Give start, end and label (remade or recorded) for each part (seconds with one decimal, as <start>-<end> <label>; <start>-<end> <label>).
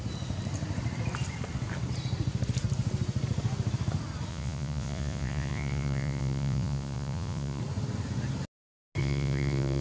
0.0-4.3 recorded; 4.3-7.6 remade; 7.6-9.0 recorded; 9.0-9.8 remade